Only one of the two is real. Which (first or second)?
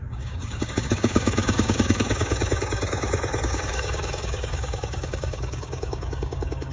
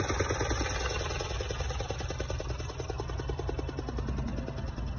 second